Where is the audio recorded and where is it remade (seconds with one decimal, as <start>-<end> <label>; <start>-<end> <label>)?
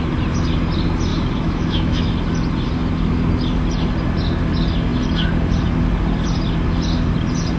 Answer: 0.0-1.1 recorded; 1.1-2.1 remade; 2.1-7.6 recorded